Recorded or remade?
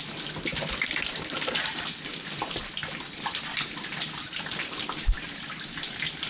recorded